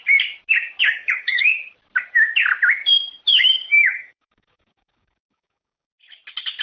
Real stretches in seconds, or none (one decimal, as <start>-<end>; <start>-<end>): 0.0-0.8; 1.4-3.3; 5.9-6.6